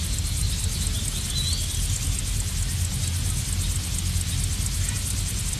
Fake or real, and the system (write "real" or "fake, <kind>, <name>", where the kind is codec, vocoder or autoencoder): real